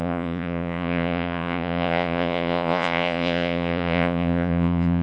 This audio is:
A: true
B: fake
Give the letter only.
B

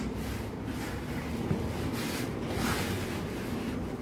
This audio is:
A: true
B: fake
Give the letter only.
A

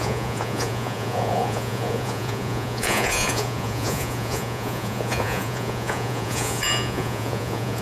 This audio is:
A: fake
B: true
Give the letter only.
A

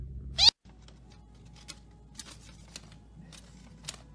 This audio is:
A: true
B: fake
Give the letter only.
A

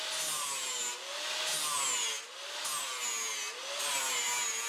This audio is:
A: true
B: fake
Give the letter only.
A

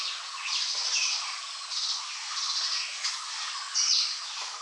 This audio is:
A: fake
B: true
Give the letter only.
B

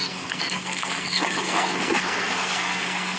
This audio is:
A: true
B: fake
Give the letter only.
B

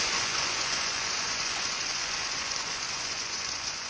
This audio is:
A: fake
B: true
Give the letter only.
A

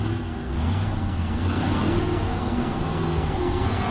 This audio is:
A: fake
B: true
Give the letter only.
A